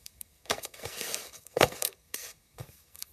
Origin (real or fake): fake